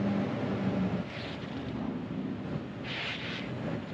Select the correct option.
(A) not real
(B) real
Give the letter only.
B